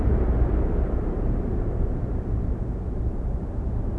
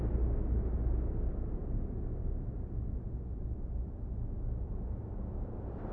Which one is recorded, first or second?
second